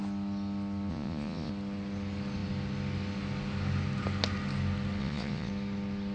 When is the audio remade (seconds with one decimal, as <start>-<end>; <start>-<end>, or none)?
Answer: 0.9-1.5; 5.0-5.5